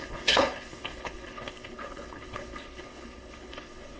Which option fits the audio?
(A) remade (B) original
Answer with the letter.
A